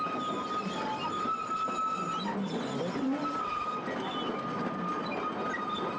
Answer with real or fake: real